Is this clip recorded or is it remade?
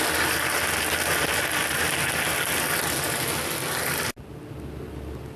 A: recorded